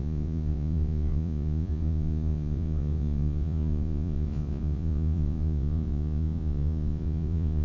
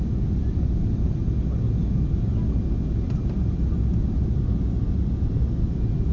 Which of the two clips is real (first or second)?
second